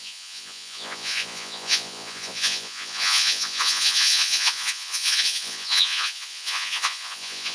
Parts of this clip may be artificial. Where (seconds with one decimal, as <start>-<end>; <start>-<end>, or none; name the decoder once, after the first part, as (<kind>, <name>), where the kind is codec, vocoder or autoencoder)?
0.0-7.5 (vocoder, Vocos)